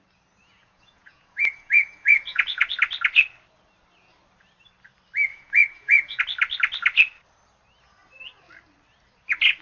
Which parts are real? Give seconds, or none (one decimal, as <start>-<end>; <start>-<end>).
0.0-0.4; 2.7-5.3; 6.2-9.6